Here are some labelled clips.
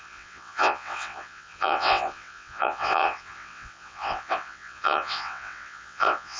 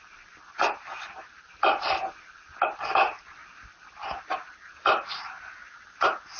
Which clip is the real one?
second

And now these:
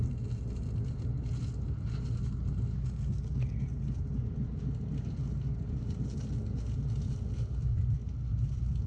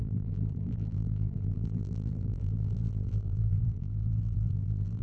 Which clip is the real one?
first